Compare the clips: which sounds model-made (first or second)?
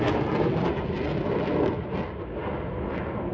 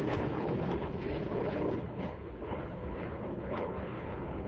second